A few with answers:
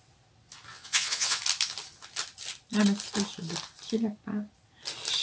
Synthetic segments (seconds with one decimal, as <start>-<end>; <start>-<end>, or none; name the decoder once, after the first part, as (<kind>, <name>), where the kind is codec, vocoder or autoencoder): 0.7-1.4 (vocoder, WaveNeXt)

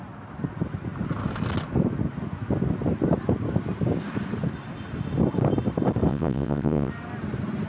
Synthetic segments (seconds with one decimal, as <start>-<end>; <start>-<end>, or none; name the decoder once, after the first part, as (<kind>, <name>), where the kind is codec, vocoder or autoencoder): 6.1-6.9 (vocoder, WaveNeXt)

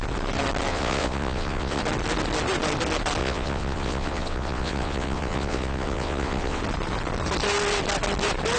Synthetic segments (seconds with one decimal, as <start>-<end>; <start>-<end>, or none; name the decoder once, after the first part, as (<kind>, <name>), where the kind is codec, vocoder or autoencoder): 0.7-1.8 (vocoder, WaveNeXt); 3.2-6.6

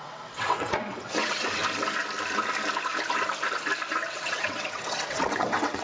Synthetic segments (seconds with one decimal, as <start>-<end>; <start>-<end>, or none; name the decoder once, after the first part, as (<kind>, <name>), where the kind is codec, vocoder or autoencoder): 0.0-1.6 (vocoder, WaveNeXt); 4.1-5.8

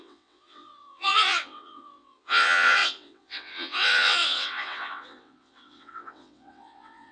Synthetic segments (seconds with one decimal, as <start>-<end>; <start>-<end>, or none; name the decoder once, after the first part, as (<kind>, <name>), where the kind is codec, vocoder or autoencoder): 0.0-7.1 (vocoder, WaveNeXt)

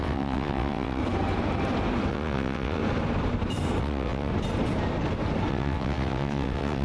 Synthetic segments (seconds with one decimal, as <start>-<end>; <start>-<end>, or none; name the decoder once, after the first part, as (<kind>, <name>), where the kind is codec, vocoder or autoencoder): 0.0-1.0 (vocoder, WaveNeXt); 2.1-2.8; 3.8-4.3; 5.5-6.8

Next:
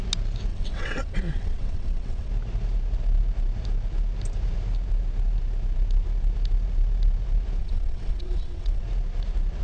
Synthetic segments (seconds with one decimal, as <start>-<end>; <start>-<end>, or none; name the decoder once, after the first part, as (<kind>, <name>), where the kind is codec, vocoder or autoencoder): 0.5-2.3 (vocoder, WaveNeXt); 7.6-8.8